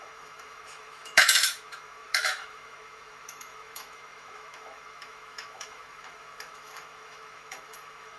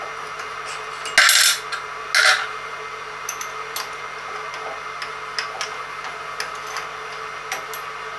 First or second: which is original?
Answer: second